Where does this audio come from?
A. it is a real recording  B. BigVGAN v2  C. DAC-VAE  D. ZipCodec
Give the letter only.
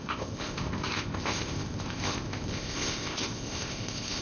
D